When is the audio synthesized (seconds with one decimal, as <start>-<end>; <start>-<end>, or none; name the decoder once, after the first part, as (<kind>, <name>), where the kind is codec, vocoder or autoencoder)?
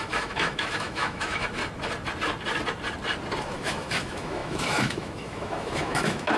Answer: 0.0-1.6 (autoencoder, DAC-VAE); 3.4-6.4